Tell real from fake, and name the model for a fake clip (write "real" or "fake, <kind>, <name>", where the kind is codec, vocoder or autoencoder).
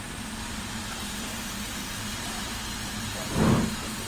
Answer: real